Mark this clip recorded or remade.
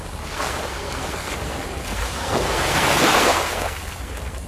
remade